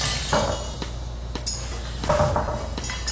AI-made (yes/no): no